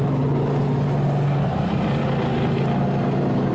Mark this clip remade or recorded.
recorded